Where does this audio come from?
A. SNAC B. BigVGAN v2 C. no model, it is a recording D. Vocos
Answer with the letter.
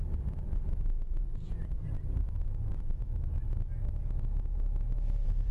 B